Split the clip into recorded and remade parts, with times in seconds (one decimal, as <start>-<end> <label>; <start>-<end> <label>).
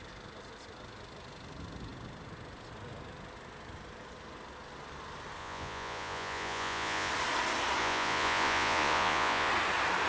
0.0-5.4 recorded; 5.4-7.1 remade; 7.1-7.8 recorded; 7.8-9.5 remade; 9.5-10.1 recorded